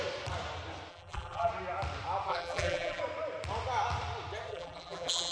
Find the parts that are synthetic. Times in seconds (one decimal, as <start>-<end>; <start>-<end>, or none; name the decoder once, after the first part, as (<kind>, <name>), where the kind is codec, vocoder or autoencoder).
0.9-1.5 (vocoder, BigVGAN v2); 2.3-3.0; 4.5-5.3